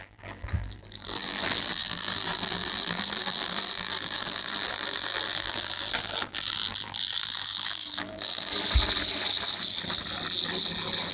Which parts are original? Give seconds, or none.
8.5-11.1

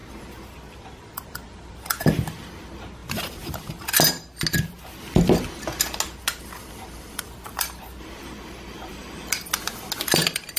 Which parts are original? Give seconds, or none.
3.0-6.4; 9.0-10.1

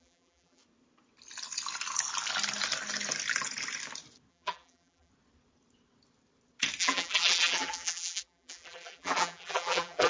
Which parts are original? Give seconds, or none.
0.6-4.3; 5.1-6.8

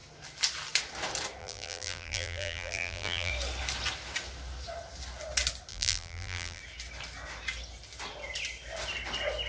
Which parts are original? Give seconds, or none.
0.0-1.4; 3.3-5.7; 6.6-9.5

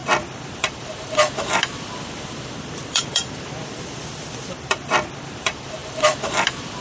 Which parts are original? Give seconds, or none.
none

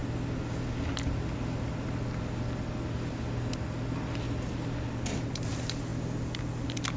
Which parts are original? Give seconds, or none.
0.0-7.0

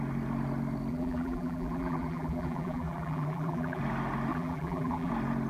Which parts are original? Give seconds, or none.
0.0-0.9; 3.8-4.3; 5.1-5.5

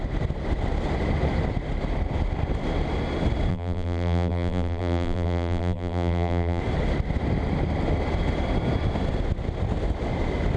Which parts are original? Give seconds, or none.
0.0-3.5; 6.6-10.6